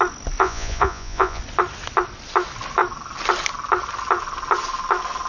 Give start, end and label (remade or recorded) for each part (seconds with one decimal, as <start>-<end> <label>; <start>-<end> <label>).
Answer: 0.0-0.4 recorded; 0.4-1.4 remade; 1.4-5.3 recorded